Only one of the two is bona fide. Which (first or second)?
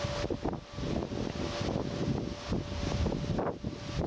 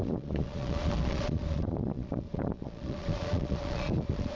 first